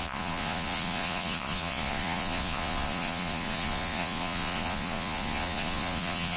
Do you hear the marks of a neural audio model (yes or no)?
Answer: yes